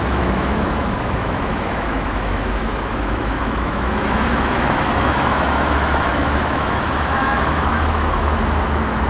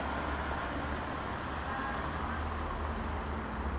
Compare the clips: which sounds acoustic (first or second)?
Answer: second